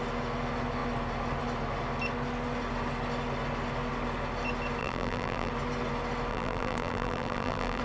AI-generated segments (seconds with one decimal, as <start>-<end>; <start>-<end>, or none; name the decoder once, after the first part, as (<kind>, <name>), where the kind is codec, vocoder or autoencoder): 4.8-5.5 (vocoder, BigVGAN v2); 6.3-7.8